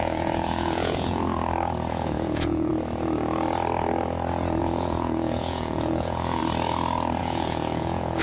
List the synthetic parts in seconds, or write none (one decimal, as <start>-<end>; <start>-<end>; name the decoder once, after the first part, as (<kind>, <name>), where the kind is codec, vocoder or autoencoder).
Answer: 0.0-1.2 (vocoder, Vocos); 1.9-2.7; 4.6-6.4; 7.2-8.2